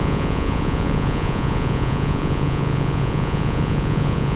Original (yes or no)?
no